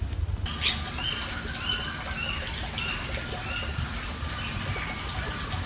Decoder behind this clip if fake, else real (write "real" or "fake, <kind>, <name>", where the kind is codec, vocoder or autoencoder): real